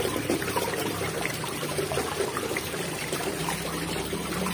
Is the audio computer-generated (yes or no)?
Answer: yes